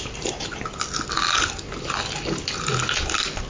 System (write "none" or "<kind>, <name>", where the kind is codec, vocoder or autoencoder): none